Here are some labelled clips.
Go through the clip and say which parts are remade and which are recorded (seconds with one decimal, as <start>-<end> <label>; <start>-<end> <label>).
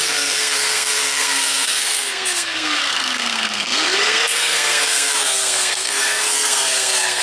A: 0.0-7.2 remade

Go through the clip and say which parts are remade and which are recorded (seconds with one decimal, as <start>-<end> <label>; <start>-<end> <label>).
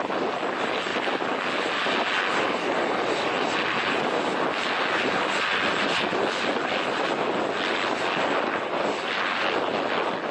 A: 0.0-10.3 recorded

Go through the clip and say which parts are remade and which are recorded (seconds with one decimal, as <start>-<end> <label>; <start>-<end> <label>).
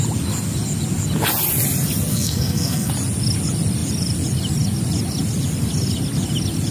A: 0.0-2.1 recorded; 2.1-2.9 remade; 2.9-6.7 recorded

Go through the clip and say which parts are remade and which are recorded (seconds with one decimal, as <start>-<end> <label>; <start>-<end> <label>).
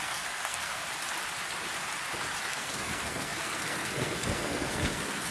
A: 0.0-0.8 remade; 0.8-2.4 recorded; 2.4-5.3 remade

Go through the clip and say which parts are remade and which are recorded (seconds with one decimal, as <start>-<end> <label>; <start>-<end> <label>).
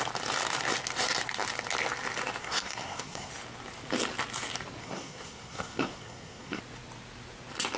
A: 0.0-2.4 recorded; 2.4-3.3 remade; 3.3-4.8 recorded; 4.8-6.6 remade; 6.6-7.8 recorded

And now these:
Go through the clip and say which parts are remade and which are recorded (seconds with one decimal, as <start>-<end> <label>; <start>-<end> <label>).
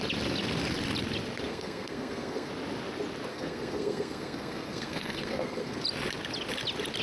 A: 0.0-1.5 recorded; 1.5-2.5 remade; 2.5-3.3 recorded; 3.3-5.8 remade; 5.8-7.0 recorded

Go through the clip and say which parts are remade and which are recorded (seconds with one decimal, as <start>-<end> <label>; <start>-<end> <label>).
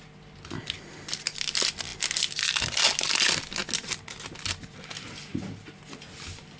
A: 0.0-6.6 recorded